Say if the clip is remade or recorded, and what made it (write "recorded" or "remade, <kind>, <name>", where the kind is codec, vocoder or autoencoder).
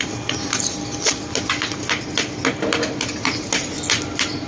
recorded